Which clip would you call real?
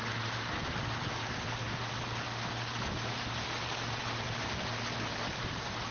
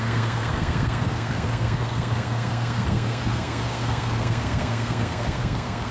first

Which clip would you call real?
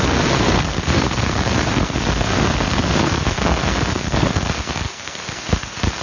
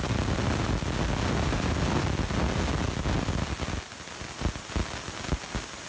second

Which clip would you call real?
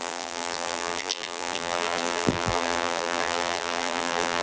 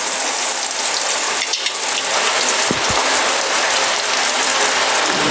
second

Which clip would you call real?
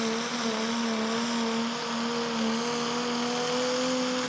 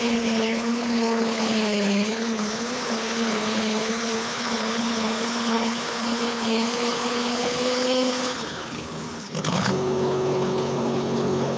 first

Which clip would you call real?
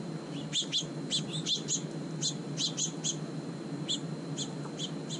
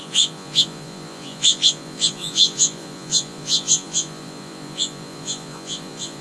first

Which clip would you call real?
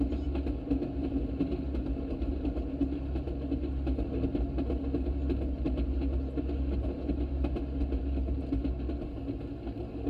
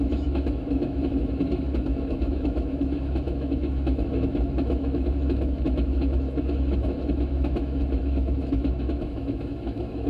first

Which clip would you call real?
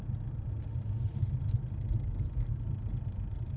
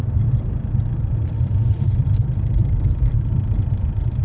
first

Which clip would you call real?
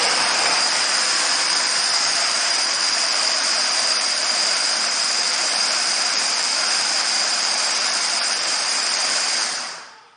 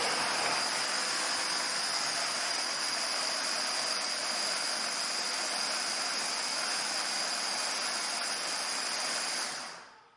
second